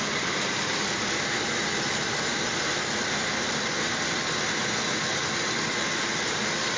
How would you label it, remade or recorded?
recorded